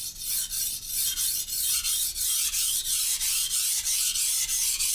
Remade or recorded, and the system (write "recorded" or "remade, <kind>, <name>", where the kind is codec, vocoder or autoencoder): recorded